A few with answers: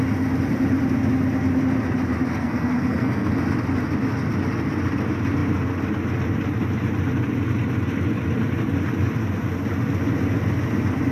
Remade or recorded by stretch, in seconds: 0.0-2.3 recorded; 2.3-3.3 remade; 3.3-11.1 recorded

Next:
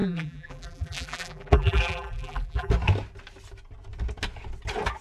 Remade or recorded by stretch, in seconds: 0.0-2.7 remade; 2.7-5.0 recorded

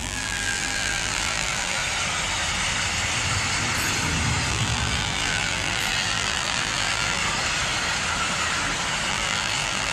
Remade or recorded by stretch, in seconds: 0.0-1.8 remade; 1.8-4.5 recorded; 4.5-7.2 remade; 7.2-9.1 recorded; 9.1-9.9 remade